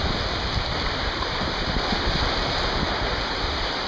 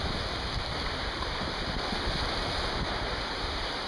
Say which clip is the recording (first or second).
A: second